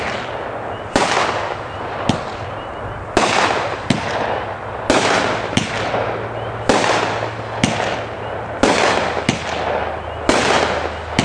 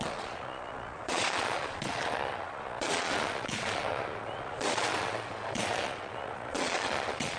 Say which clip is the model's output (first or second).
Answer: second